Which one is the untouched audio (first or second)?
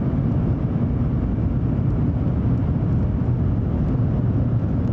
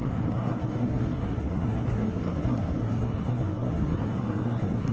first